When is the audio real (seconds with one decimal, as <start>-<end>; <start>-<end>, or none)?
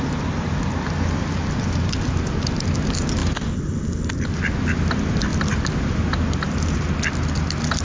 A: 0.0-7.8